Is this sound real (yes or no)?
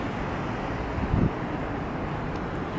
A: yes